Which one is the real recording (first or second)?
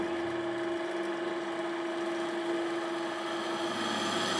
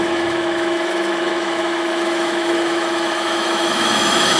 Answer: first